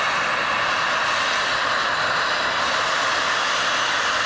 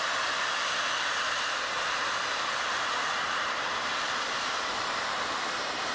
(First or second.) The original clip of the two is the first